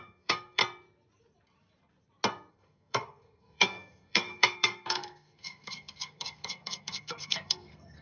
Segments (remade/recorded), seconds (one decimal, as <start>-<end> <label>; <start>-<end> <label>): 0.0-0.6 remade; 0.6-2.5 recorded; 2.5-8.0 remade